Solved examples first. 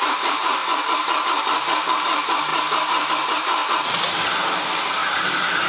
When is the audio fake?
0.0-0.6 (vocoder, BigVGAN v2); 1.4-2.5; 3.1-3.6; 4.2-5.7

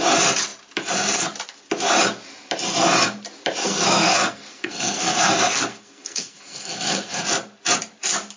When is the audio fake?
3.6-7.2 (codec, SNAC)

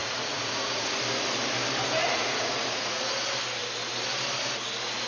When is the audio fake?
0.0-1.0 (vocoder, Vocos); 2.0-3.1

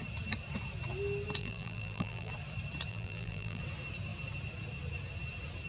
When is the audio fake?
1.4-2.3 (vocoder, BigVGAN v2); 2.9-3.6

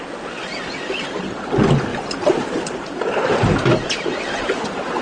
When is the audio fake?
1.9-2.9 (vocoder, BigVGAN v2)